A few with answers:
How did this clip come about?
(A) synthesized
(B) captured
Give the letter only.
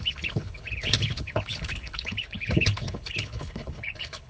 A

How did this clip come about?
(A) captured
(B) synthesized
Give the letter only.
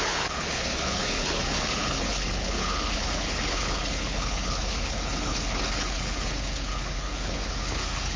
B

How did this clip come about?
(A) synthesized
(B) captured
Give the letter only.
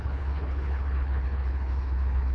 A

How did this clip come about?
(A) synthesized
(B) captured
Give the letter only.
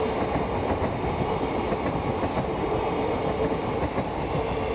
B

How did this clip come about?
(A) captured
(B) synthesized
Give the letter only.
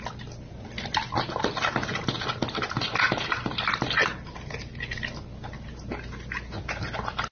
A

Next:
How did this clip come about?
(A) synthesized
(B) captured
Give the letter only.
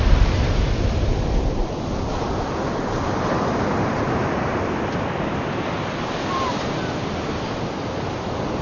B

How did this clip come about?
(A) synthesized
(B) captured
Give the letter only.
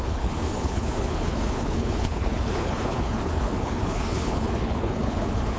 A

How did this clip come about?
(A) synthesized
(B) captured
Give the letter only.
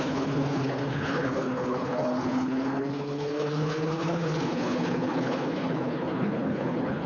A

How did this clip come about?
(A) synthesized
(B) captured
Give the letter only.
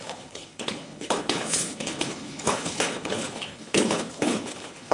A